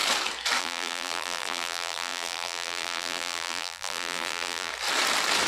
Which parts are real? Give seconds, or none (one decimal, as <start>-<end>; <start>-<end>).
0.0-0.6; 4.7-5.5